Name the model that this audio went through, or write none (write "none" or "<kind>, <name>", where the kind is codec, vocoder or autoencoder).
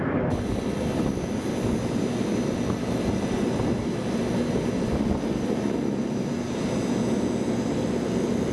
none